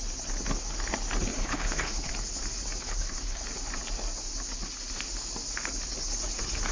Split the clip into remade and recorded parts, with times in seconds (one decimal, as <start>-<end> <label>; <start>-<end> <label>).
0.0-1.3 recorded; 1.3-2.1 remade; 2.1-2.8 recorded; 2.8-3.4 remade; 3.4-6.7 recorded